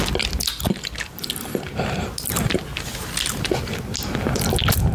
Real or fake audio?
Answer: real